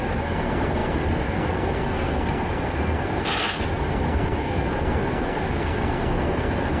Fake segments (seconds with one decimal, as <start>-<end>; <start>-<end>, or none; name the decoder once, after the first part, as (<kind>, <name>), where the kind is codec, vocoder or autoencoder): 0.0-6.8 (codec, SNAC)